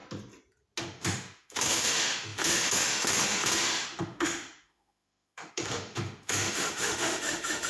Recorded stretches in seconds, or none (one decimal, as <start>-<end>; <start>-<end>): 0.0-0.8